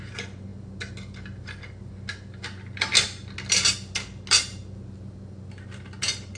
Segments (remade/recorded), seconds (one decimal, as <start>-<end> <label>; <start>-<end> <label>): 0.0-6.4 recorded